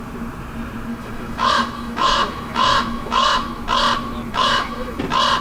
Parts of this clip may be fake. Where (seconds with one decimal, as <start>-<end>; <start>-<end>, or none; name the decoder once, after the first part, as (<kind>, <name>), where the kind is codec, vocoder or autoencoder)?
0.9-3.6 (autoencoder, DAC-VAE); 4.3-5.0